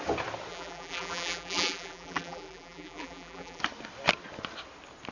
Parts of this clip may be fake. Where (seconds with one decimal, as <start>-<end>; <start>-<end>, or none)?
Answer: 0.5-3.6